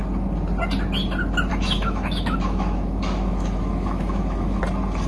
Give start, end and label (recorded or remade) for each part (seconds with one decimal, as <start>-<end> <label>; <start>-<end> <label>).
0.0-1.5 recorded; 1.5-4.6 remade; 4.6-5.1 recorded